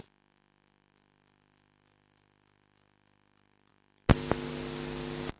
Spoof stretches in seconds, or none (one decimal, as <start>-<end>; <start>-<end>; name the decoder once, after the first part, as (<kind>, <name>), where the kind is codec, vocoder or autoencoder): none